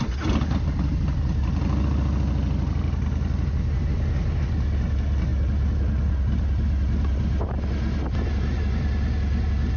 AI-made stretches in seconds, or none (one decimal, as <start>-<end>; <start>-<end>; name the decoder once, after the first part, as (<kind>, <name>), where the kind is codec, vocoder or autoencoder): none